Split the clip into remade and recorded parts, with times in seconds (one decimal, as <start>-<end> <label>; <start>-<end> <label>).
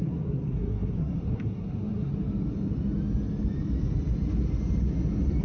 0.0-2.1 remade; 2.1-5.4 recorded